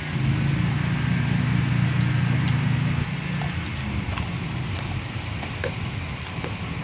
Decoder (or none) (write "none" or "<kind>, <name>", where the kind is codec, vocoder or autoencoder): none